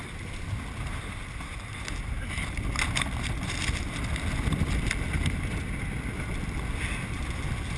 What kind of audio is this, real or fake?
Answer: real